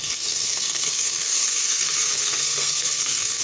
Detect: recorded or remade remade